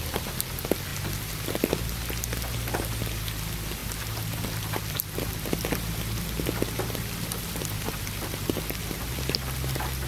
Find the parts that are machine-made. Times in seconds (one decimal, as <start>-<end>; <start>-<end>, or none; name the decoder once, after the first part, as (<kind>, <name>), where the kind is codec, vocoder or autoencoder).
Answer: 0.9-1.5 (vocoder, BigVGAN v2); 3.8-8.8